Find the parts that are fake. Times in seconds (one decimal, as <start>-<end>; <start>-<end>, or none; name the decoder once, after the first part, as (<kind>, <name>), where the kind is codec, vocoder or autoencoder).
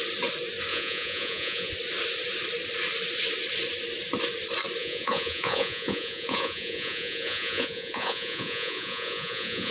0.7-1.7 (vocoder, Vocos); 4.8-9.7